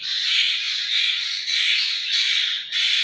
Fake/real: fake